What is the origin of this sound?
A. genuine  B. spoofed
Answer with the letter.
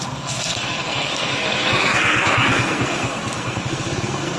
B